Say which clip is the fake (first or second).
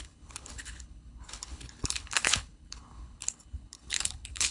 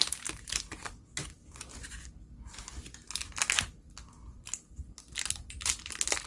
first